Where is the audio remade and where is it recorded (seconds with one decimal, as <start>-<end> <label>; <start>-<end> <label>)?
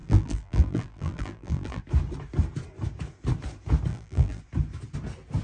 0.0-1.8 remade; 1.8-3.9 recorded; 3.9-4.4 remade; 4.4-5.4 recorded